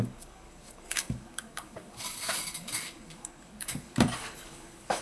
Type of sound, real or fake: fake